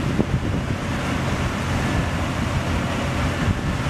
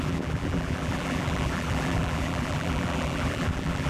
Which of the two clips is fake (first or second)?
second